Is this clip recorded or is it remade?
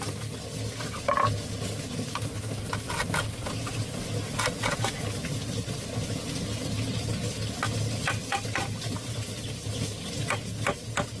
recorded